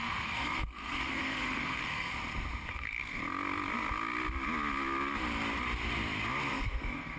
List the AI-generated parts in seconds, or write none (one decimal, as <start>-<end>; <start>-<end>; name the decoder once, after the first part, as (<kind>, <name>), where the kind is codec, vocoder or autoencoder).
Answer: 0.0-2.1 (codec, SNAC); 2.7-3.2; 6.5-7.2